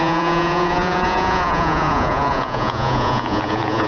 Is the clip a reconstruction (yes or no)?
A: yes